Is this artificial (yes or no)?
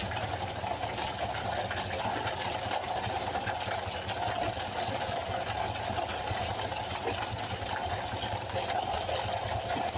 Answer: no